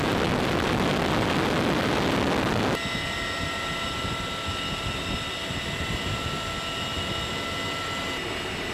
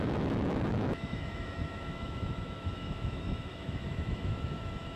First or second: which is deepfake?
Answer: second